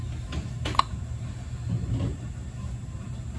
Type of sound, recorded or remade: recorded